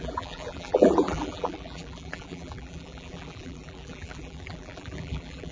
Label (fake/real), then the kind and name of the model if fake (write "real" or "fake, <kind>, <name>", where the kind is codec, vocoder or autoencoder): fake, vocoder, BigVGAN v2